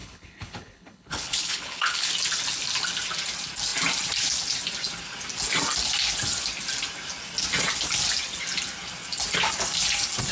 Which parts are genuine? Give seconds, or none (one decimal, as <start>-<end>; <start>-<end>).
2.1-10.3